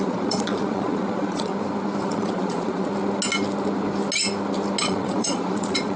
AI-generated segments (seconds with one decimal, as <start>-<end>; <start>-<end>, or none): 0.0-1.5; 2.0-2.9; 4.8-6.0